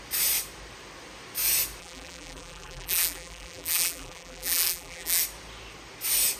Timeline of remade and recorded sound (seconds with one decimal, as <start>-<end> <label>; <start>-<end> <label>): 0.0-1.8 recorded; 1.8-5.2 remade; 5.2-6.4 recorded